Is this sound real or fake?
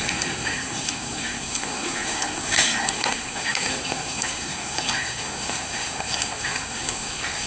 fake